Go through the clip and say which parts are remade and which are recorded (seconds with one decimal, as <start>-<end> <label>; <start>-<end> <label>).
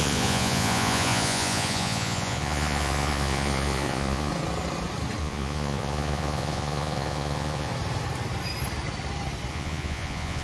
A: 0.0-4.3 remade; 4.3-5.2 recorded; 5.2-7.7 remade; 7.7-9.5 recorded; 9.5-10.4 remade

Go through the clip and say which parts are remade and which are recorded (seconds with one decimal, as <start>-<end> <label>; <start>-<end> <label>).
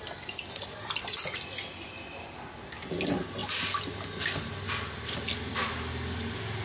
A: 0.0-6.6 recorded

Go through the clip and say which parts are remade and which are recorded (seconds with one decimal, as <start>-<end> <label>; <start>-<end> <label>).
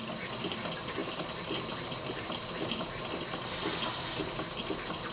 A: 0.0-5.1 recorded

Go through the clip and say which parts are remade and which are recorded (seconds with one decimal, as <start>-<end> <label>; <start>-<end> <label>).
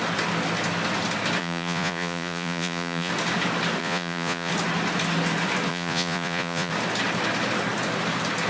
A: 0.0-1.4 recorded; 1.4-3.1 remade; 3.1-3.8 recorded; 3.8-4.5 remade; 4.5-5.7 recorded; 5.7-6.7 remade; 6.7-8.5 recorded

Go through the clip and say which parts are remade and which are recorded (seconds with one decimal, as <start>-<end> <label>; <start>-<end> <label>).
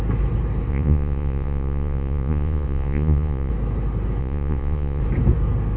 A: 0.0-0.7 recorded; 0.7-3.5 remade; 3.5-4.2 recorded; 4.2-5.0 remade; 5.0-5.8 recorded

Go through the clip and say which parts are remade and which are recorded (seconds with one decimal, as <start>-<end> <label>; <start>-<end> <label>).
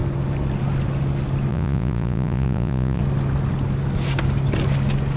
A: 0.0-1.5 recorded; 1.5-3.0 remade; 3.0-5.2 recorded